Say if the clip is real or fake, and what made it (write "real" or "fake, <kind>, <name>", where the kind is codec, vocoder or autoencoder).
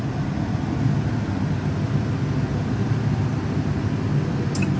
real